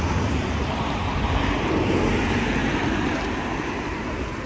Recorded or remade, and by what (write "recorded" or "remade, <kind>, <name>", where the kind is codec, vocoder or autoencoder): remade, vocoder, BigVGAN v2